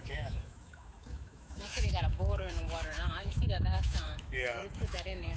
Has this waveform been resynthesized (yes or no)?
yes